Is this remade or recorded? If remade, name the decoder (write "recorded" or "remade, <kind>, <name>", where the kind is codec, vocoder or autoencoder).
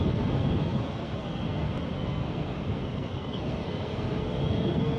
remade, codec, SNAC